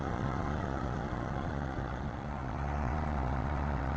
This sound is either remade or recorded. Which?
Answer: remade